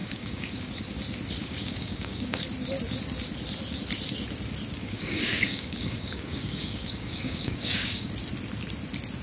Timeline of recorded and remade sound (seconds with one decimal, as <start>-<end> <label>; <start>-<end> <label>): 0.0-0.7 remade; 0.7-1.4 recorded; 1.4-2.4 remade; 2.4-4.8 recorded; 4.8-8.1 remade; 8.1-9.2 recorded